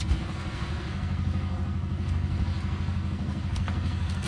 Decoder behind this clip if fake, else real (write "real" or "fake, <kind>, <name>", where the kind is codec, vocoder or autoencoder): fake, codec, SNAC